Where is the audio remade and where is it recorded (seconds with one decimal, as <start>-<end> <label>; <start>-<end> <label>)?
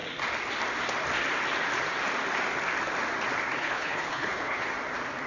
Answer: 0.0-3.6 recorded; 3.6-4.6 remade; 4.6-5.3 recorded